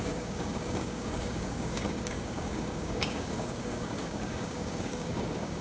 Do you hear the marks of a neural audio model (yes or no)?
yes